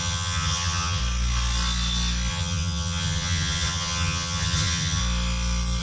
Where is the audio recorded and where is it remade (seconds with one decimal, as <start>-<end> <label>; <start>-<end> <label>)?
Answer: 0.0-1.0 remade; 1.0-2.3 recorded; 2.3-5.0 remade; 5.0-5.8 recorded